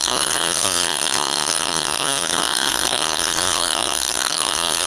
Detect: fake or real fake